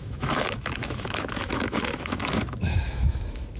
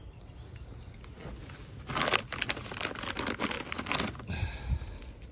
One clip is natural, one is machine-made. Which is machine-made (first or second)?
first